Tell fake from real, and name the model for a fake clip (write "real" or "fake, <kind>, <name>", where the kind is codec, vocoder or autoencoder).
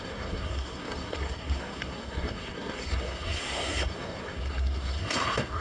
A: fake, codec, SNAC